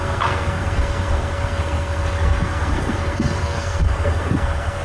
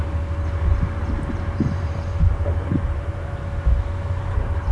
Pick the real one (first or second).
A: second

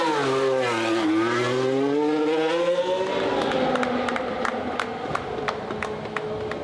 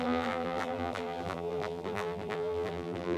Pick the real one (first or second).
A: first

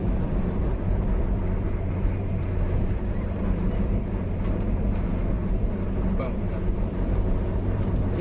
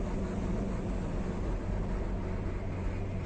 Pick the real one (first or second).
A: second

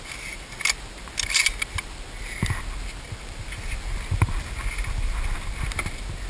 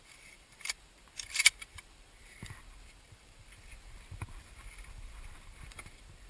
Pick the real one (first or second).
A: first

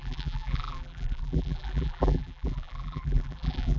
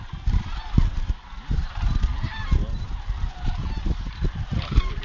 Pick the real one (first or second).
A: second